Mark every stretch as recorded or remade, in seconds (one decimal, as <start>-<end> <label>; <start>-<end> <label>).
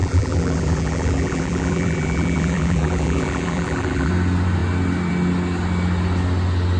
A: 0.0-4.1 remade; 4.1-6.8 recorded